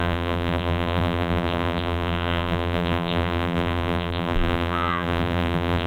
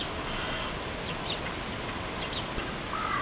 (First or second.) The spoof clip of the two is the first